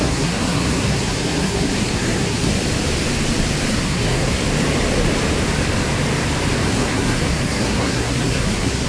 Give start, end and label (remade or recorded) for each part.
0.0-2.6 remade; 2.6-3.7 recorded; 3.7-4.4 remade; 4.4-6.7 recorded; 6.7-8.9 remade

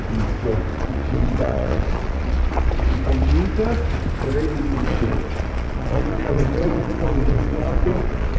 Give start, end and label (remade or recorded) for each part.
0.0-0.7 recorded; 0.7-2.7 remade; 2.7-4.7 recorded; 4.7-8.4 remade

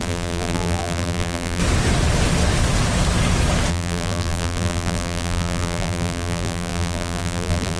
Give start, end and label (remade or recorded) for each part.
0.0-1.6 remade; 1.6-3.7 recorded; 3.7-7.8 remade

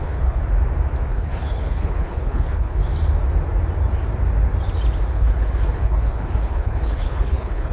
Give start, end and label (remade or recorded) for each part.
0.0-0.4 remade; 0.4-1.1 recorded; 1.1-2.8 remade; 2.8-5.1 recorded; 5.1-7.7 remade

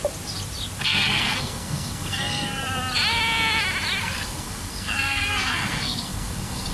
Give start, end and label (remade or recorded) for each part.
0.0-0.8 recorded; 0.8-2.6 remade; 2.6-4.0 recorded; 4.0-6.7 remade

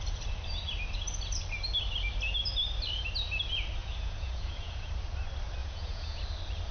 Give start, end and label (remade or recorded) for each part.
0.0-3.8 recorded; 3.8-4.9 remade; 4.9-5.6 recorded; 5.6-6.2 remade; 6.2-6.7 recorded

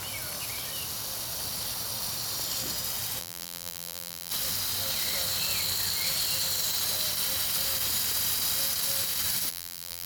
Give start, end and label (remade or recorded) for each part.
0.0-3.2 recorded; 3.2-4.3 remade; 4.3-9.5 recorded; 9.5-10.1 remade

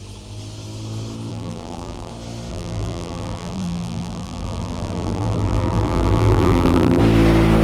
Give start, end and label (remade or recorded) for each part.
0.0-1.3 recorded; 1.3-2.1 remade; 2.1-2.5 recorded; 2.5-7.0 remade; 7.0-7.6 recorded